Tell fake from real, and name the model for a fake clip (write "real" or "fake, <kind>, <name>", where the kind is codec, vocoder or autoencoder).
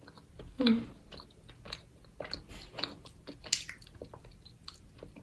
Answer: real